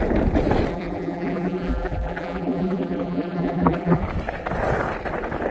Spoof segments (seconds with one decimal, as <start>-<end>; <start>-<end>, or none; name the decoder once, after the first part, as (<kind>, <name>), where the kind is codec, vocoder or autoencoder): 0.7-4.0 (vocoder, BigVGAN v2)